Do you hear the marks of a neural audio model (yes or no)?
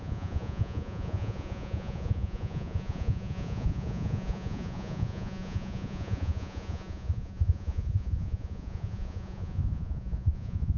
yes